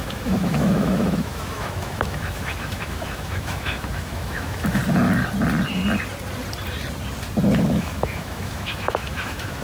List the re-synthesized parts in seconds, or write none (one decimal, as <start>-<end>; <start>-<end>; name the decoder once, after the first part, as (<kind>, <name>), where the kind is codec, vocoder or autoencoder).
0.0-4.8 (autoencoder, DAC-VAE); 7.7-9.6